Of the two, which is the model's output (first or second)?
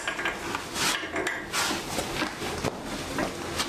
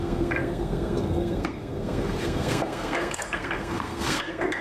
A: second